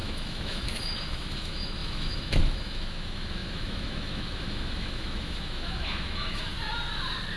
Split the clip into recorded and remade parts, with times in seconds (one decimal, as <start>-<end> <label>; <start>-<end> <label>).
0.0-6.5 remade; 6.5-7.4 recorded